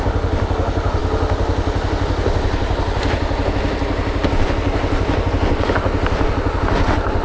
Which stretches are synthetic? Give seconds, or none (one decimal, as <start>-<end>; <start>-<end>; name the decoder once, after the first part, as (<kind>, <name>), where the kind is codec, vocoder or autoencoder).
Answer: none